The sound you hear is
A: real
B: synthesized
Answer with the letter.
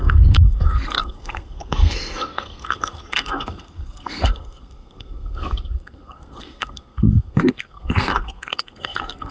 B